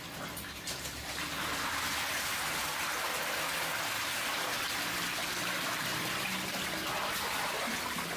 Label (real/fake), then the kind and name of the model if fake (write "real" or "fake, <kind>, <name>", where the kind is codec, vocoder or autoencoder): real